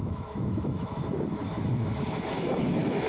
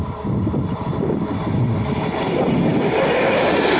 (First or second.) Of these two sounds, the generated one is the first